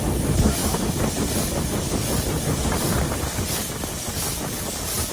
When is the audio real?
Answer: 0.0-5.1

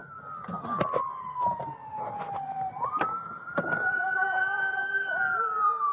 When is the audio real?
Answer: 1.9-2.5

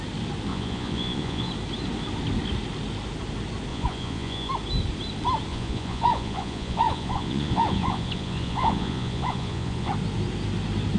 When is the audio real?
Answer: 0.0-0.5; 1.5-3.7; 4.5-5.5; 9.9-11.0

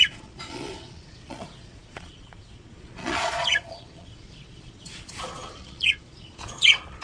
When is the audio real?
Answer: none